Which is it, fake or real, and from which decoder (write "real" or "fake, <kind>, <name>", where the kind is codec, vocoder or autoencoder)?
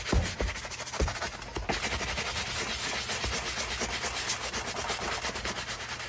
real